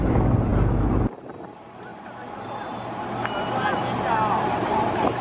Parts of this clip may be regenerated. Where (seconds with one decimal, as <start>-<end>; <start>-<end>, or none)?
none